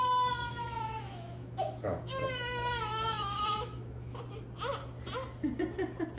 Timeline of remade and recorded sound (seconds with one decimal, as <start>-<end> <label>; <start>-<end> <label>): 0.0-0.5 recorded; 0.5-4.2 remade; 4.2-6.2 recorded